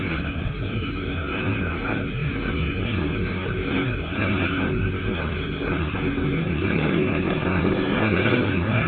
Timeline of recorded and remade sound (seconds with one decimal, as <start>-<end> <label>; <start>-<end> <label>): 0.0-8.9 remade